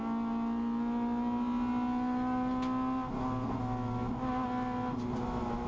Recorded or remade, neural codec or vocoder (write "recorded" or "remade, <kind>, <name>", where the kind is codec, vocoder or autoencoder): recorded